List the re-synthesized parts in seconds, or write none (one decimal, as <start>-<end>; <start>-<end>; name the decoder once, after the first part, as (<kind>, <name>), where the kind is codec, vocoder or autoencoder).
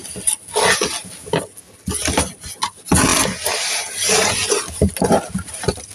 none